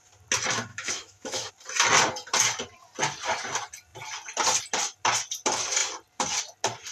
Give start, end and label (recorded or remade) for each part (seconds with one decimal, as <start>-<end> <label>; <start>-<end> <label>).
0.0-0.7 recorded; 0.7-1.5 remade; 1.5-6.9 recorded